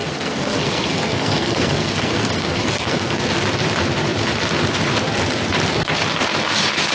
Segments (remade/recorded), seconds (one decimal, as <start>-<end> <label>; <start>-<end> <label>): 0.0-3.2 remade; 3.2-6.9 recorded